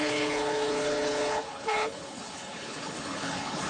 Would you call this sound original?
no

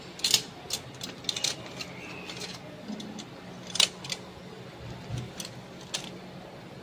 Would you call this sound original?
yes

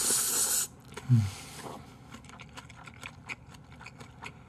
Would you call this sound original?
yes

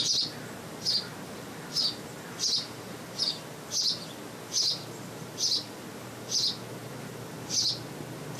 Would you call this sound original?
yes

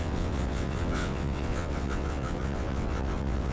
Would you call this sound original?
no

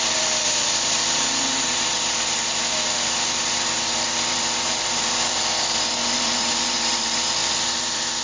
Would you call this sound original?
no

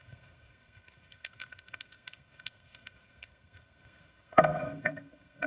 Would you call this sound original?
no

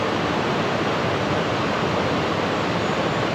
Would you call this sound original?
yes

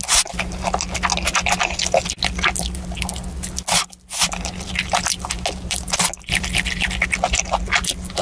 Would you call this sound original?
yes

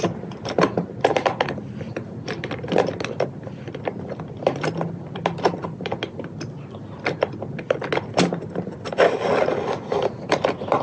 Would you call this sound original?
yes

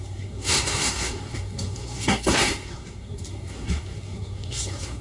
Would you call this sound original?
no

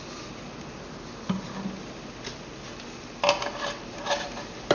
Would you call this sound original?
yes